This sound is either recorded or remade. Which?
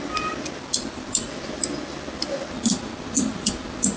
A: recorded